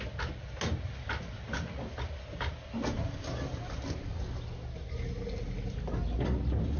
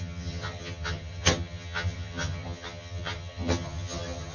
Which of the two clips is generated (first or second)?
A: second